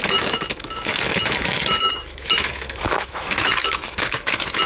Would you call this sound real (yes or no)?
no